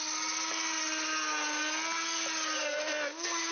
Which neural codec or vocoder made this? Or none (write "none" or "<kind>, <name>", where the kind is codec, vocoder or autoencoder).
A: none